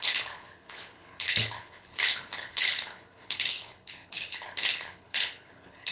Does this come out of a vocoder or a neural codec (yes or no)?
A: yes